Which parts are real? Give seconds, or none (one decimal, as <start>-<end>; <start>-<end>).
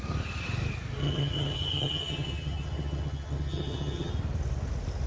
0.0-1.0; 4.1-5.1